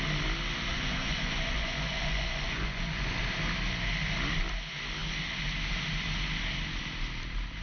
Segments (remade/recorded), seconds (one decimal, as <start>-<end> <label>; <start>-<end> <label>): 0.0-0.7 recorded; 0.7-3.2 remade; 3.2-7.6 recorded